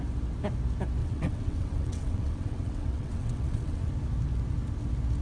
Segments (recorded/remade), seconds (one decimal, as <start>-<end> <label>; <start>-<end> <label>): 0.0-1.0 recorded; 1.0-3.9 remade; 3.9-5.2 recorded